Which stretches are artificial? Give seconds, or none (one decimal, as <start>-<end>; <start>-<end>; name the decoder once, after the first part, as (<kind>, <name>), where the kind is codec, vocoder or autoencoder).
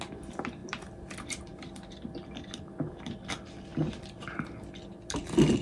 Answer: 0.6-1.1 (vocoder, BigVGAN v2)